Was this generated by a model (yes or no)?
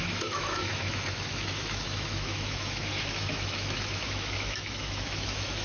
yes